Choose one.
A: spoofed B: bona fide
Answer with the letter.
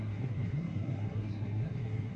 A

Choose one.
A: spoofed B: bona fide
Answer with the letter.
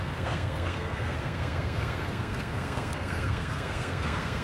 A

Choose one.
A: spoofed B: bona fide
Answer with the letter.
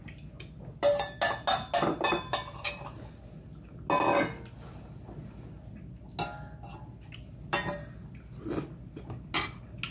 B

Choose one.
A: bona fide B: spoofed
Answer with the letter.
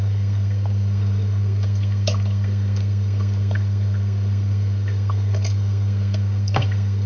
B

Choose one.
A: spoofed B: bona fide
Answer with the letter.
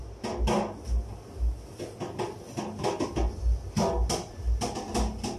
B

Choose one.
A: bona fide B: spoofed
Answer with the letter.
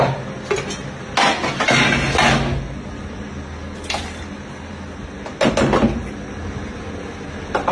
A